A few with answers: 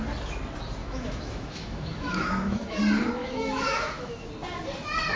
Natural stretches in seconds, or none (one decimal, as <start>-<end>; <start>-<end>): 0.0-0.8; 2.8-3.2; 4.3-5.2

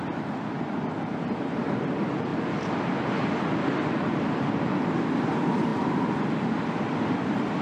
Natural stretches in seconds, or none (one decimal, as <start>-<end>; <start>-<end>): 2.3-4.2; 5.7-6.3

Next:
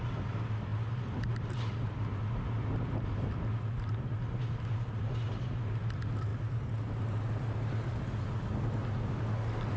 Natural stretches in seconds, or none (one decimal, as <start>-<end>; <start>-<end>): 0.0-9.8

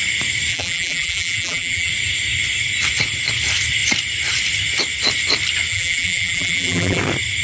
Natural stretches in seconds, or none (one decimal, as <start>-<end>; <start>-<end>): 0.0-0.5; 1.9-5.7; 7.0-7.4

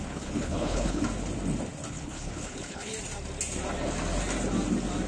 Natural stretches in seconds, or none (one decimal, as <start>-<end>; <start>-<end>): 1.0-1.9; 2.9-5.1